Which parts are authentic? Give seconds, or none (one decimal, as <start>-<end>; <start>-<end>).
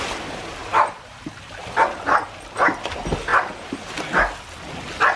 0.0-0.6; 1.6-5.2